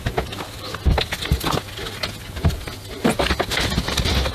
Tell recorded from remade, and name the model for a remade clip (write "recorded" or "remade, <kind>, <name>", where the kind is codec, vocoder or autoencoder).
recorded